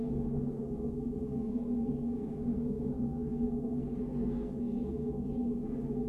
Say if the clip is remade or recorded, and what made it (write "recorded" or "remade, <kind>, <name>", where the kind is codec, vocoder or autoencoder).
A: remade, codec, SNAC